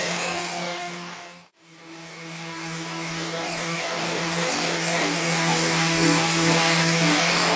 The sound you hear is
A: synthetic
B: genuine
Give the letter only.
A